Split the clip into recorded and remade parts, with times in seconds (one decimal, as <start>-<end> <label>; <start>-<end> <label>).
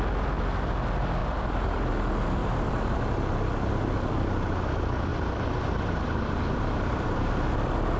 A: 0.0-1.2 recorded; 1.2-1.9 remade; 1.9-2.4 recorded; 2.4-3.0 remade; 3.0-5.1 recorded; 5.1-7.3 remade; 7.3-8.0 recorded